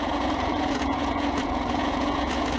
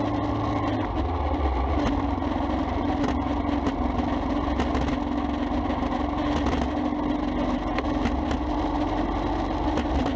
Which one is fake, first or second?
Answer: first